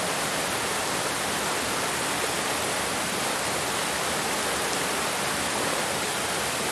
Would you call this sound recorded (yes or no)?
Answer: yes